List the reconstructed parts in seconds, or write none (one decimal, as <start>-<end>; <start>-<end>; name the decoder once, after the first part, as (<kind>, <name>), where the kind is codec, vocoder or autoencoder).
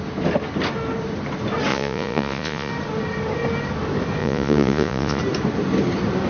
1.7-2.7 (vocoder, Vocos); 4.2-5.2